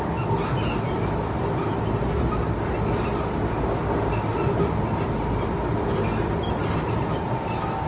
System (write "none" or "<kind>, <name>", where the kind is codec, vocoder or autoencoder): none